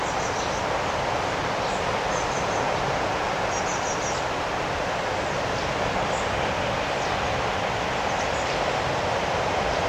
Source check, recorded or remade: recorded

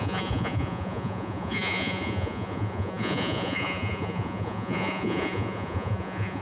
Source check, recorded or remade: remade